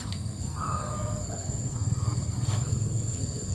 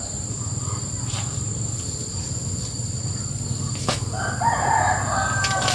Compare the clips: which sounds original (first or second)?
second